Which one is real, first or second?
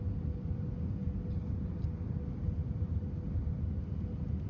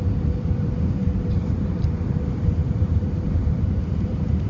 first